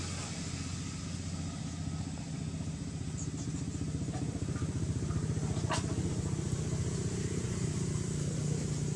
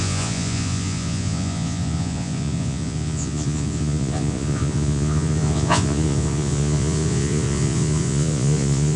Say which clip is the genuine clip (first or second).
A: first